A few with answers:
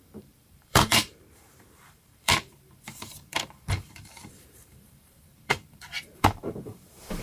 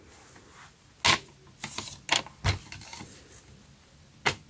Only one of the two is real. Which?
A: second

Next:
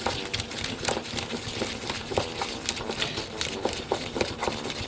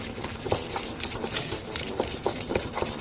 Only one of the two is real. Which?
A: first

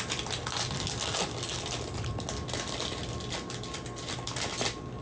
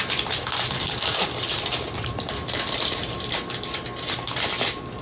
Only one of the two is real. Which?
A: first